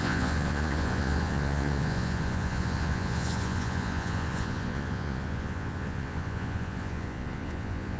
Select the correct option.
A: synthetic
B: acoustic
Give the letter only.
A